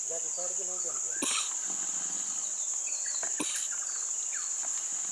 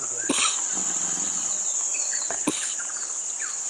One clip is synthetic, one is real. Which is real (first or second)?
first